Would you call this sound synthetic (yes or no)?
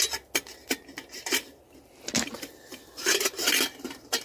no